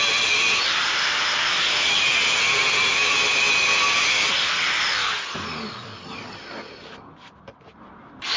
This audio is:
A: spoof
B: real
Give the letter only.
A